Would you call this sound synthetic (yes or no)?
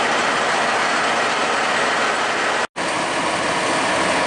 no